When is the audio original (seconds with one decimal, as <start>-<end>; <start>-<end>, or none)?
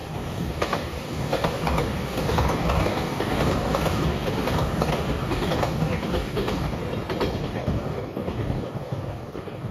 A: 6.8-7.4